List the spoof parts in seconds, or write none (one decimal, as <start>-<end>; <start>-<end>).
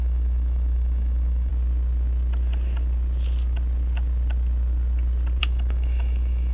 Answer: 0.0-1.5; 5.4-6.5